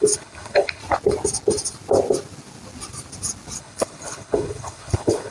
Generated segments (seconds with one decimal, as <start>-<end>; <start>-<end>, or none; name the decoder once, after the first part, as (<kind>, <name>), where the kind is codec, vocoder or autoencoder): 0.0-0.8 (codec, HILCodec); 3.6-5.3